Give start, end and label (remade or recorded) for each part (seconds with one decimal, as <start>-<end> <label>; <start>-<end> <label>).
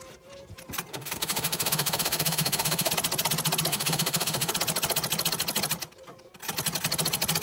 0.0-0.9 recorded; 0.9-2.9 remade; 2.9-3.7 recorded; 3.7-4.5 remade; 4.5-7.4 recorded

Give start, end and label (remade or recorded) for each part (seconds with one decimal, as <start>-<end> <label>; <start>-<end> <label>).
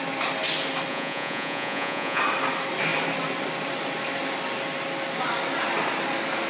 0.0-0.9 recorded; 0.9-2.2 remade; 2.2-6.5 recorded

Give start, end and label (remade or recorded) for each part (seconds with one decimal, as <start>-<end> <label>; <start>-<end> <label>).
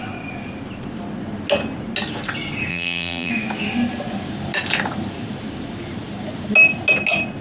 0.0-2.7 recorded; 2.7-3.3 remade; 3.3-7.4 recorded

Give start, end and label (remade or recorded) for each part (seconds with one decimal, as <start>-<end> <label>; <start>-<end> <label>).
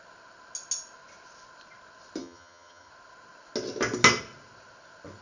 0.0-2.2 recorded; 2.2-2.9 remade; 2.9-5.2 recorded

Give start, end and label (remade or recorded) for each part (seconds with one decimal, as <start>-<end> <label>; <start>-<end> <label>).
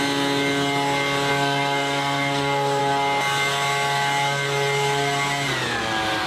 0.0-1.3 recorded; 1.3-2.8 remade; 2.8-6.3 recorded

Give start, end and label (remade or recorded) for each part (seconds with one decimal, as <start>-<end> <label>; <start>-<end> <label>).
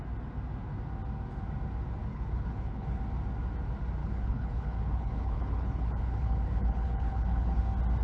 0.0-2.1 recorded; 2.1-3.0 remade; 3.0-4.0 recorded; 4.0-7.6 remade; 7.6-8.0 recorded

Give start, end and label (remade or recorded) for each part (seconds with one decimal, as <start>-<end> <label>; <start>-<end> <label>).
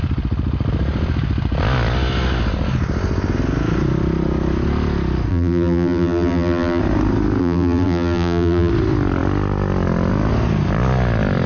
0.0-5.3 recorded; 5.3-6.8 remade; 6.8-7.4 recorded; 7.4-8.7 remade; 8.7-11.5 recorded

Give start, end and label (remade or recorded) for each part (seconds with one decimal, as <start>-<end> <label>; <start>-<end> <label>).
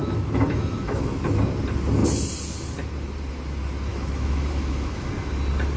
0.0-1.2 remade; 1.2-3.9 recorded; 3.9-5.1 remade; 5.1-5.8 recorded